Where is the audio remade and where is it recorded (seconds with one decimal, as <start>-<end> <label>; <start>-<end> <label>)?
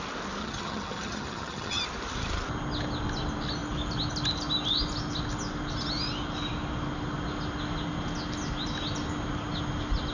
0.0-0.4 recorded; 0.4-1.8 remade; 1.8-10.1 recorded